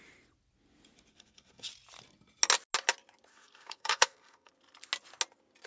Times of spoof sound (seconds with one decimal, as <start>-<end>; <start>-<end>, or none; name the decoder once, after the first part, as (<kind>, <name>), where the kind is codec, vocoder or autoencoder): 1.1-1.7 (codec, SNAC); 3.3-4.5